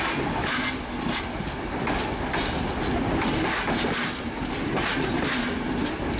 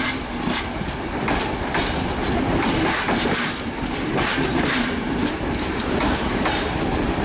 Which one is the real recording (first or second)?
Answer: first